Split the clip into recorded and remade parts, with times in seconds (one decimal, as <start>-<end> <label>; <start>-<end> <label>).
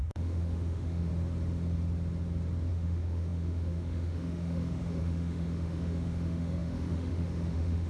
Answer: 0.0-1.1 remade; 1.1-2.7 recorded; 2.7-7.9 remade